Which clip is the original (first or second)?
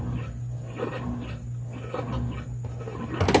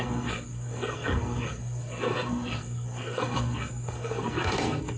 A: first